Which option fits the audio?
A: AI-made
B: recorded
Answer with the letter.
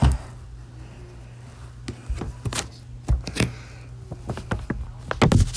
B